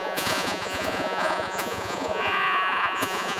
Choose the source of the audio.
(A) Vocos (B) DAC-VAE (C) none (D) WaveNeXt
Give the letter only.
A